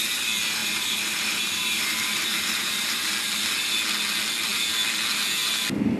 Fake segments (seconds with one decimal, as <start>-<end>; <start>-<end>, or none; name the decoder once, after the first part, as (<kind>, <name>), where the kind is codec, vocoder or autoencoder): 0.6-3.1 (vocoder, BigVGAN v2)